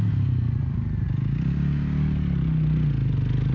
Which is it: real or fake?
real